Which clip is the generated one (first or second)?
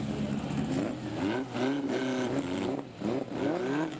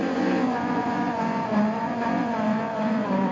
second